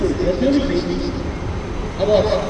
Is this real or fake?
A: real